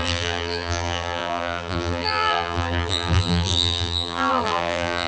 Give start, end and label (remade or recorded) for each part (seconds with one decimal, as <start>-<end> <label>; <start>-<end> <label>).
0.0-5.1 remade